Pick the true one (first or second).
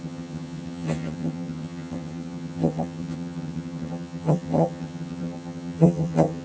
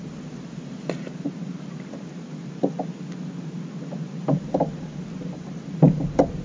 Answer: second